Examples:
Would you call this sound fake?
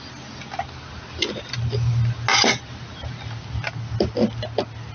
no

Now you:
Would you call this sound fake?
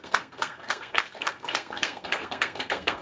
yes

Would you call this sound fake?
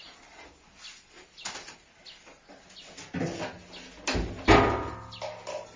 no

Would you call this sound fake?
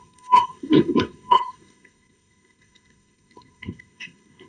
yes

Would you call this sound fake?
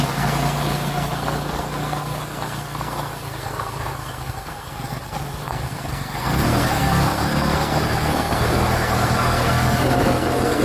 yes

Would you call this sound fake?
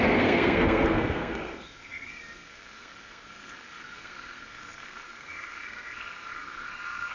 yes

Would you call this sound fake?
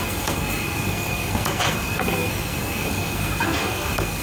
yes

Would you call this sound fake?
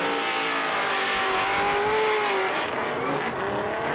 no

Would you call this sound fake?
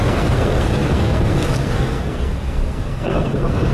yes